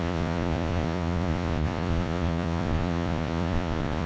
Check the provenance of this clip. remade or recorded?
remade